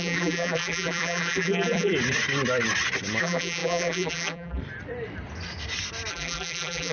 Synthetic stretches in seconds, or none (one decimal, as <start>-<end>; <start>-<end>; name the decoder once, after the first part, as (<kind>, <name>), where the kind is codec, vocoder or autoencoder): 0.0-1.9 (vocoder, BigVGAN v2); 3.2-4.6; 6.1-6.9